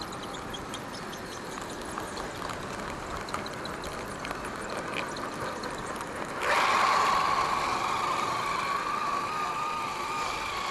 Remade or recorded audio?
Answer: recorded